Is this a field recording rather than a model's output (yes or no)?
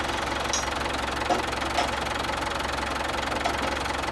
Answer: yes